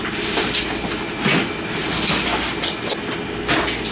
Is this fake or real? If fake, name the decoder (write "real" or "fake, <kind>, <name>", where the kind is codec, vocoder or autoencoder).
real